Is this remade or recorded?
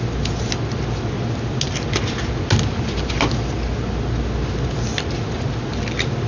recorded